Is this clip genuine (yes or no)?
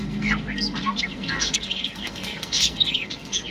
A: no